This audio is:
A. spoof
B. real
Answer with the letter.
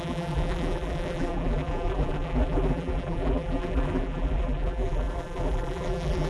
A